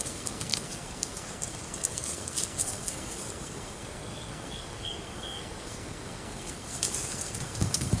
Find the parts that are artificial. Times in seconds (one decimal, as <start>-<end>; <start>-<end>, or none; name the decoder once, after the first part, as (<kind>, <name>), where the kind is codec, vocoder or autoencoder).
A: 0.0-8.0 (codec, SNAC)

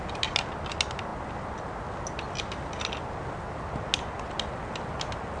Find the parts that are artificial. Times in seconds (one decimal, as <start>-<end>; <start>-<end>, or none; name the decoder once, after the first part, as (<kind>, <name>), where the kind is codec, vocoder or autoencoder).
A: none

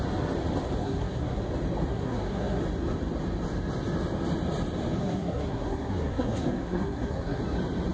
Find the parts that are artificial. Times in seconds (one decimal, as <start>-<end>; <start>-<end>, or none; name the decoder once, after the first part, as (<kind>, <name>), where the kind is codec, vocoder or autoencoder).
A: 0.8-1.4 (codec, SNAC); 1.9-2.6; 5.0-7.4

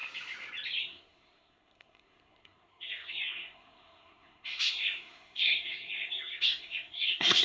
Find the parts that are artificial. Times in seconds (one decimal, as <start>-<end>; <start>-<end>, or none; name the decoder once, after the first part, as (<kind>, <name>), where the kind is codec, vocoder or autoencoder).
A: 0.8-7.4 (codec, SNAC)

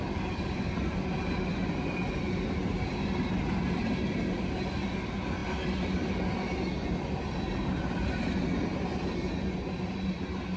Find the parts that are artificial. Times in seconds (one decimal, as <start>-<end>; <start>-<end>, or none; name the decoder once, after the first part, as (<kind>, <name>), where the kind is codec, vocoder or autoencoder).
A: none

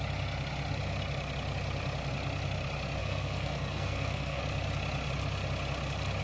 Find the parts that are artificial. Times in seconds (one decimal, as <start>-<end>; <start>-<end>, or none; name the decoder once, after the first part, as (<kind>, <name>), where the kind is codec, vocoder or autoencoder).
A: 3.0-4.4 (codec, SNAC)

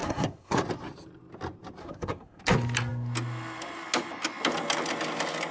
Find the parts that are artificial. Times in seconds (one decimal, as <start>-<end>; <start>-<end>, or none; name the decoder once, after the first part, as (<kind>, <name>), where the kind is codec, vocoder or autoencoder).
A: 0.0-0.6 (codec, SNAC); 1.8-2.4